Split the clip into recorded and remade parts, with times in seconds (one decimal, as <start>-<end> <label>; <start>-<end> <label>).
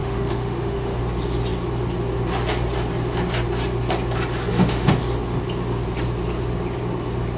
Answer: 0.0-1.0 remade; 1.0-4.5 recorded; 4.5-5.0 remade; 5.0-7.4 recorded